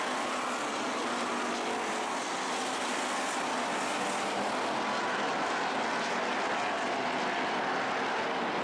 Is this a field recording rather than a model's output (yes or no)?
yes